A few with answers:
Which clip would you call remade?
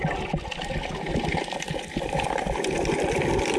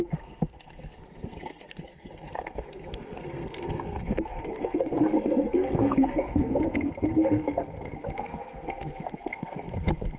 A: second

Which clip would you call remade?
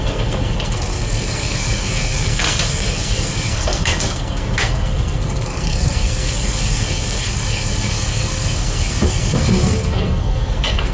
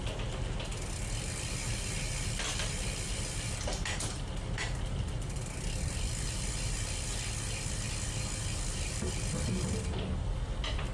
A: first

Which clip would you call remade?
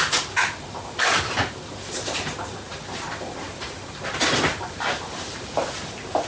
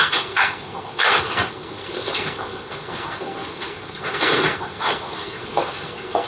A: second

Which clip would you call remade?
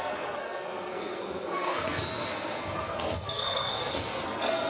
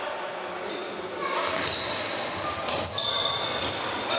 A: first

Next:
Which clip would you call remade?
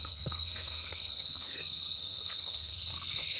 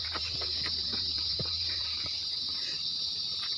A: first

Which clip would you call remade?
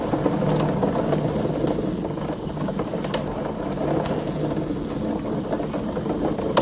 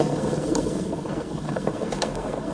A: second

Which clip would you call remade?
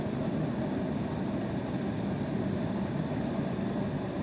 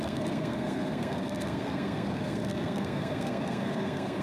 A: second